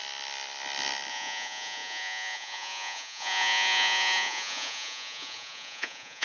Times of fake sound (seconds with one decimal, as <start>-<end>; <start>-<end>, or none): 1.1-6.2